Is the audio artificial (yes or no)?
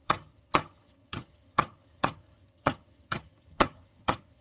yes